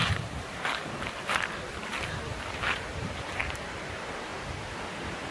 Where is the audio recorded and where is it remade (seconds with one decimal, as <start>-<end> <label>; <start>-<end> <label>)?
0.0-2.7 recorded; 2.7-4.3 remade; 4.3-5.3 recorded